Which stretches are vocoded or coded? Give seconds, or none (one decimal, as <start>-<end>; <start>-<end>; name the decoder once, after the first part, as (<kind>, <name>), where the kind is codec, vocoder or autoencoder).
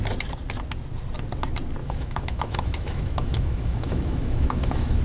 1.8-5.0 (autoencoder, DAC-VAE)